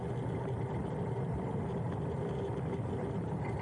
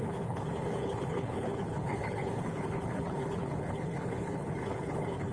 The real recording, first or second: first